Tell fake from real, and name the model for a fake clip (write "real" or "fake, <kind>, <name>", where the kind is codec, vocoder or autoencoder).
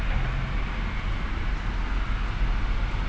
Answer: real